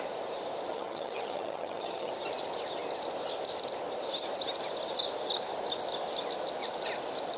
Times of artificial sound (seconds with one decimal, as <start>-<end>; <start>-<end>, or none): 0.7-2.1